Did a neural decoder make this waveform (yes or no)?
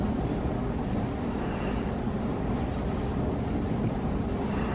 no